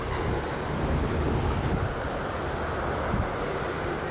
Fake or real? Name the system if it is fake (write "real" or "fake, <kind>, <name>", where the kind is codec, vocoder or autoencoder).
real